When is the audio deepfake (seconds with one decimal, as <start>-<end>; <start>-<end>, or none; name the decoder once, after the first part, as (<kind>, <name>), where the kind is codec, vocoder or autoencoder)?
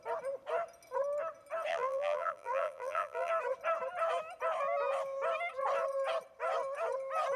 1.7-3.3 (vocoder, BigVGAN v2)